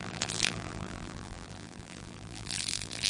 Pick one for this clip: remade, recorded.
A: remade